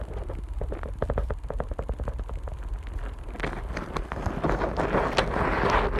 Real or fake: real